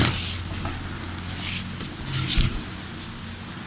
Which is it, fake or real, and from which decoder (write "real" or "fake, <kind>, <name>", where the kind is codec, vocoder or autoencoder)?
real